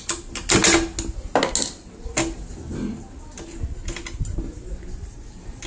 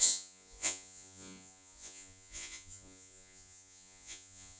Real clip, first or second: first